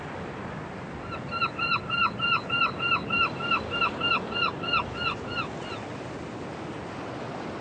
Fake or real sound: real